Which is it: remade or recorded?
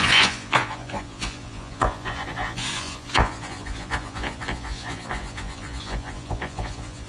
remade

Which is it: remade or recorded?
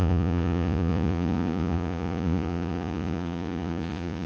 remade